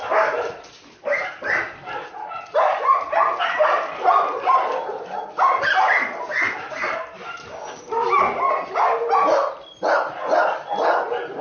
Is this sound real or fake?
real